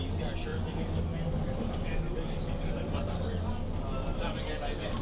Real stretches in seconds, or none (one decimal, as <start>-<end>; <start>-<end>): 0.0-5.0